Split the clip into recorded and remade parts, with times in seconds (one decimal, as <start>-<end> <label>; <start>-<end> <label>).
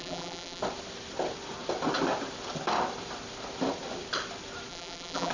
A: 0.0-0.6 remade; 0.6-4.7 recorded; 4.7-5.3 remade